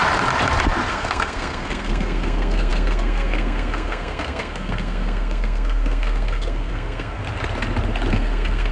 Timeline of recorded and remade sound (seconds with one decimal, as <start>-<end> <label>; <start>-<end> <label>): 0.0-0.9 recorded; 0.9-7.2 remade; 7.2-8.1 recorded; 8.1-8.7 remade